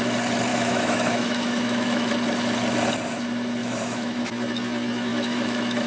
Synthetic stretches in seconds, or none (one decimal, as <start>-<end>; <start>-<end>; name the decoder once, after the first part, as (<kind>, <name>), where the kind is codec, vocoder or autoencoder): 0.5-2.1 (autoencoder, DAC-VAE); 3.6-4.2; 5.1-5.9